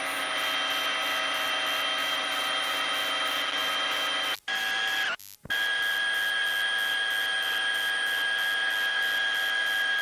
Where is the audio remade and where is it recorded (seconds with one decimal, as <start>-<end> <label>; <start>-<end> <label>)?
0.0-2.0 recorded; 2.0-2.9 remade; 2.9-10.0 recorded